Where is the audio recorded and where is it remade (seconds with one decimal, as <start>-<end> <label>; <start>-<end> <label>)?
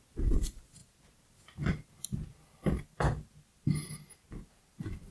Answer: 0.0-5.1 recorded